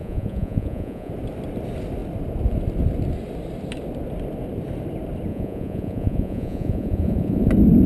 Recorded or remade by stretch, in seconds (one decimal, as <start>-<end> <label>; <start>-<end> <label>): 0.0-1.1 remade; 1.1-5.3 recorded; 5.3-7.5 remade; 7.5-7.9 recorded